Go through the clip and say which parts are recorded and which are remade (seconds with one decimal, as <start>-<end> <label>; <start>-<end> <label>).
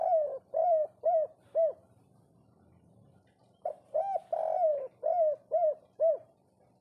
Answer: 0.0-6.8 recorded